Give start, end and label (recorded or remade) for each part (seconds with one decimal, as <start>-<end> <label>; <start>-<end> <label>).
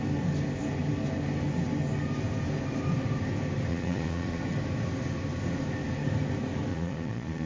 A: 0.0-3.7 recorded; 3.7-4.4 remade; 4.4-6.7 recorded; 6.7-7.5 remade